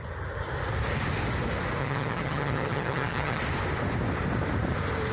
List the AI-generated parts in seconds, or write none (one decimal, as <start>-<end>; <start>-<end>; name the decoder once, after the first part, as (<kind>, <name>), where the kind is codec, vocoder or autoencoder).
1.8-3.4 (vocoder, HiFi-GAN)